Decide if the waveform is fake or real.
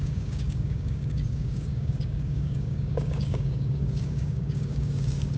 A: fake